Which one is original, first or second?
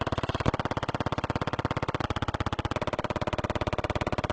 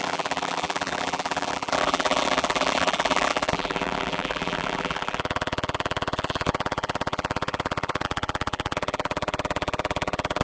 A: first